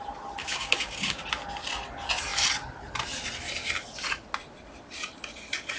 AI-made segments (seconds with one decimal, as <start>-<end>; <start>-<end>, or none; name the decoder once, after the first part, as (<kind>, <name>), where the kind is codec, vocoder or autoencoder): 0.4-1.2 (codec, DAC)